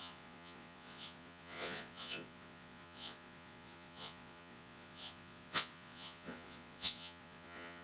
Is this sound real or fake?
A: fake